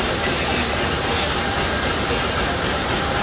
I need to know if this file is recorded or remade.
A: remade